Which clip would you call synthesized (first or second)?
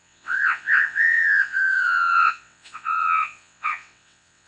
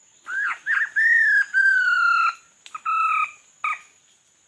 first